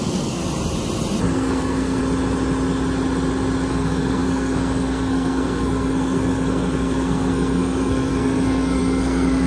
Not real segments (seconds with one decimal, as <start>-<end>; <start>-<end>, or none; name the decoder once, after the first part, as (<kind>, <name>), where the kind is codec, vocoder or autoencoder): 0.0-0.4 (codec, SNAC); 1.3-2.0; 3.7-9.5